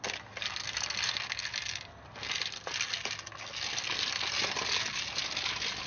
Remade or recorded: recorded